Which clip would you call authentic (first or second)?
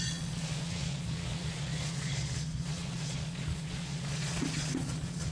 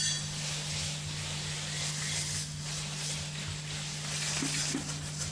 second